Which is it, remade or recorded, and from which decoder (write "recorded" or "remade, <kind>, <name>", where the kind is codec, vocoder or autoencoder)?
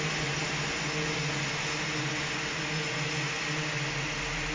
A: recorded